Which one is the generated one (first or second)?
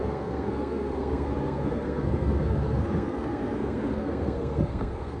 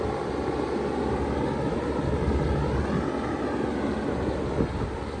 first